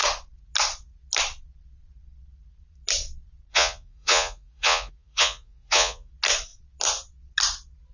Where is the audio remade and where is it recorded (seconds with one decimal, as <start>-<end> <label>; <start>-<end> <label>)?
0.0-3.5 recorded; 3.5-6.1 remade; 6.1-7.9 recorded